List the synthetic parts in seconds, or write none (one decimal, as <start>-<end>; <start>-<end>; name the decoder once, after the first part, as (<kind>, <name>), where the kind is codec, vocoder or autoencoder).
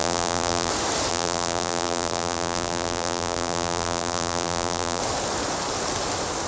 0.0-0.7 (vocoder, BigVGAN v2); 1.1-5.0